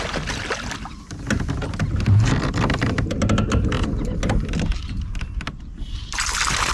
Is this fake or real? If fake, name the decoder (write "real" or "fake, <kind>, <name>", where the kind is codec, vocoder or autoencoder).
real